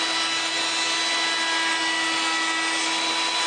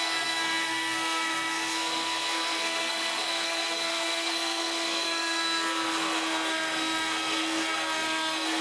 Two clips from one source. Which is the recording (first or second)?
first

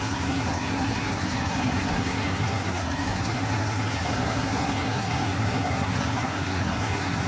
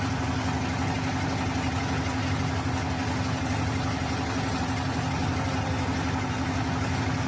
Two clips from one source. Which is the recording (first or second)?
second